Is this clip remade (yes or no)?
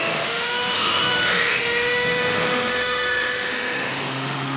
yes